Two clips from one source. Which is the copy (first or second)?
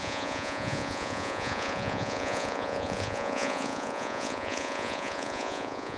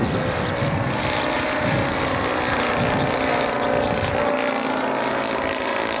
first